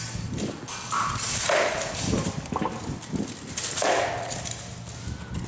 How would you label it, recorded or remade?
recorded